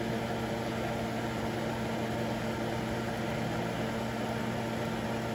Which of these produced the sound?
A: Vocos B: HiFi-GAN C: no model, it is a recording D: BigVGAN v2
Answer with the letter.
C